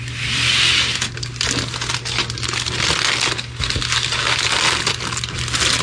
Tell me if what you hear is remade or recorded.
recorded